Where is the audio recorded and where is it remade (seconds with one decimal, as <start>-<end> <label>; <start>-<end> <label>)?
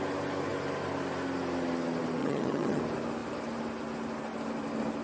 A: 0.0-2.2 recorded; 2.2-2.8 remade; 2.8-5.0 recorded